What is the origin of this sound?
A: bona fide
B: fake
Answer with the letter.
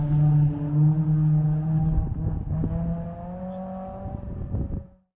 A